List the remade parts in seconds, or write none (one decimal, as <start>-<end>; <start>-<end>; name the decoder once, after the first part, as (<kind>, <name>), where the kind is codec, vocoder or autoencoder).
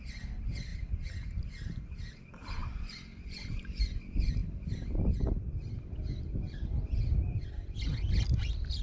2.6-4.0 (vocoder, BigVGAN v2)